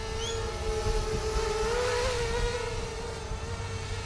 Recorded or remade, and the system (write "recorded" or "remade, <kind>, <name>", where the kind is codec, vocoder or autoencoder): recorded